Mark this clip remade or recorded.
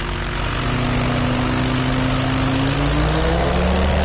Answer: recorded